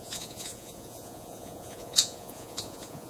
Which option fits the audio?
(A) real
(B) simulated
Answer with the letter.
B